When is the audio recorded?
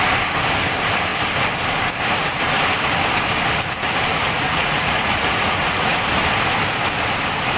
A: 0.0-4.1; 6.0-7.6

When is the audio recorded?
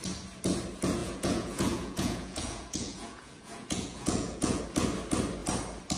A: 0.0-1.0; 4.6-6.0